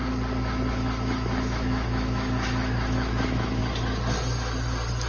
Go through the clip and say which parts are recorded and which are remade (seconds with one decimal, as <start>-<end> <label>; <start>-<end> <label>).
0.0-0.7 recorded; 0.7-3.6 remade; 3.6-5.1 recorded